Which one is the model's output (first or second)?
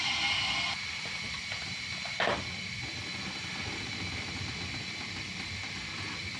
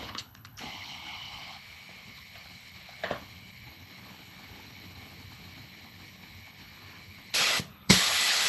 second